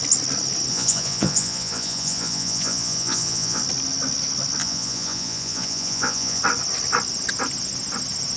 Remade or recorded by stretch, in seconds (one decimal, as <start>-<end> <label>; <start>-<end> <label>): 0.0-0.7 recorded; 0.7-3.6 remade; 3.6-4.6 recorded; 4.6-6.4 remade; 6.4-8.4 recorded